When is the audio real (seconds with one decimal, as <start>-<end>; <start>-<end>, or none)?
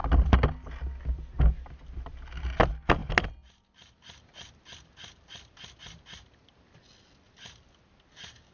0.0-8.5